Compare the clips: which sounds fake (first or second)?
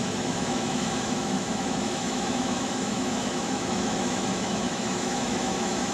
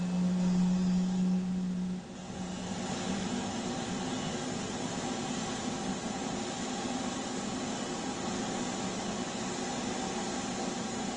first